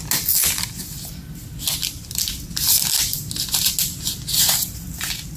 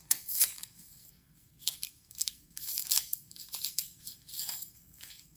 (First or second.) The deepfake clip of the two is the second